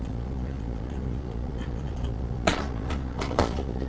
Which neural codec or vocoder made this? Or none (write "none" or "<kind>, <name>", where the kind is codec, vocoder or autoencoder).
vocoder, Vocos